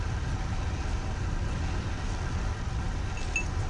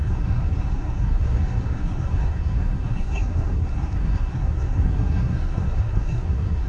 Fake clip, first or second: second